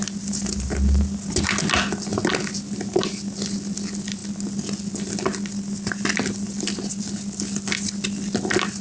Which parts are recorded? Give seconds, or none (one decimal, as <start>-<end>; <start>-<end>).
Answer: 0.0-8.8